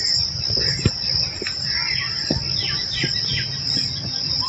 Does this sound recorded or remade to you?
recorded